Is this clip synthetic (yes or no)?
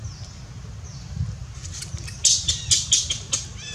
no